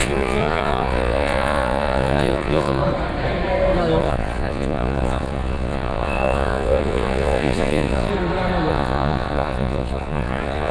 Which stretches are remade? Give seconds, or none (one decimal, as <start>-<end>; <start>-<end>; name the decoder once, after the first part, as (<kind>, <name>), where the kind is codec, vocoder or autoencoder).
0.0-2.8 (vocoder, Vocos); 4.0-8.1; 8.7-10.7

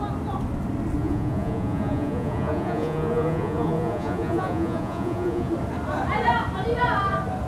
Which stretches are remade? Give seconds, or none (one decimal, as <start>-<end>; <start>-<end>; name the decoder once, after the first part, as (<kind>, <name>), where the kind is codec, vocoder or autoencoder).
1.0-5.5 (vocoder, Vocos)

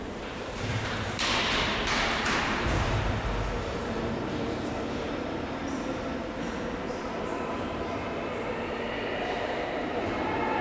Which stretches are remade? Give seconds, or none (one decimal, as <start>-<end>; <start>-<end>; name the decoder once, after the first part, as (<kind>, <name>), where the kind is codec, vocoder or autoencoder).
0.0-5.6 (vocoder, BigVGAN v2); 6.9-10.6

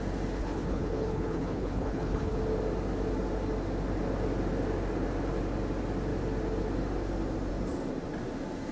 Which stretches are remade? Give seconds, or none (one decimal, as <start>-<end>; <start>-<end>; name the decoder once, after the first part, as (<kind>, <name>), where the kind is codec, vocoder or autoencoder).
0.4-2.4 (codec, HILCodec)